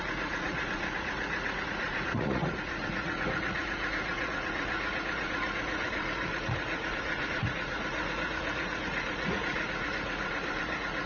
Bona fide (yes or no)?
no